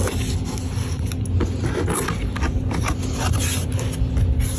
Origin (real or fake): real